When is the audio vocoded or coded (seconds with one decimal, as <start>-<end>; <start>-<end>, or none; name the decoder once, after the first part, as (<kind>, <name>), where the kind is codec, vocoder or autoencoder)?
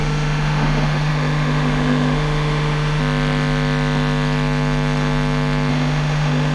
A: 0.0-3.0 (autoencoder, DAC-VAE); 5.7-6.5